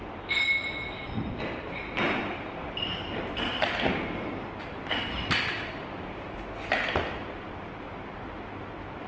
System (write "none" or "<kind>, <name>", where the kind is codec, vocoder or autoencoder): none